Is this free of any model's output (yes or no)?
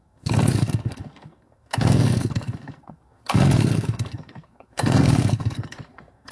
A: no